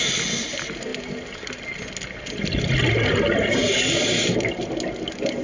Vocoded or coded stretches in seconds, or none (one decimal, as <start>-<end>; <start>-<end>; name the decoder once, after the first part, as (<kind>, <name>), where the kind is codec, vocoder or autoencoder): none